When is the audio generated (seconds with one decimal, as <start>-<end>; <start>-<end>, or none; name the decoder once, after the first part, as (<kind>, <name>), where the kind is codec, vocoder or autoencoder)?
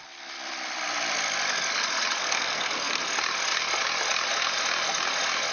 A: 2.2-3.0 (codec, SNAC)